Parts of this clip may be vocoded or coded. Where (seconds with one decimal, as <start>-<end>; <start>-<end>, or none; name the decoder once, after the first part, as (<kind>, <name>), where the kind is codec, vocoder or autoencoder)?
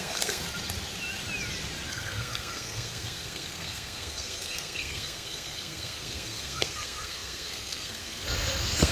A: 0.0-0.4 (codec, SNAC); 1.9-8.9